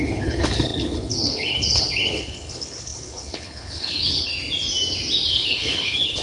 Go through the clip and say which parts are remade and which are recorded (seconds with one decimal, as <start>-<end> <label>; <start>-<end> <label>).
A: 0.0-4.3 remade; 4.3-5.3 recorded; 5.3-6.2 remade